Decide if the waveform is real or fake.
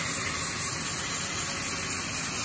real